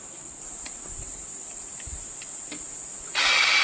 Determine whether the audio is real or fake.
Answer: real